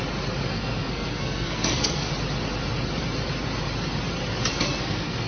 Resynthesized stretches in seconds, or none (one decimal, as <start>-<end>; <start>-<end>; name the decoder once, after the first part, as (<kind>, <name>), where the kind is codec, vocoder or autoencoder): 0.5-2.1 (codec, SNAC); 4.5-5.3

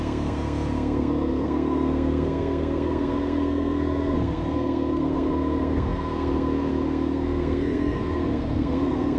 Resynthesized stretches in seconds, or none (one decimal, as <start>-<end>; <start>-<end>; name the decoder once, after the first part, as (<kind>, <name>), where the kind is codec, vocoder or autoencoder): 0.0-9.2 (codec, SNAC)